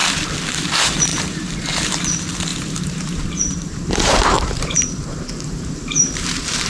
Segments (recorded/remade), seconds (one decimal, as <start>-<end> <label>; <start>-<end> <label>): 0.0-1.1 recorded; 1.1-1.9 remade; 1.9-2.5 recorded; 2.5-6.7 remade